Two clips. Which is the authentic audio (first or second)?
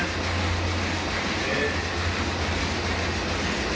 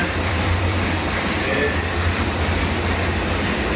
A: first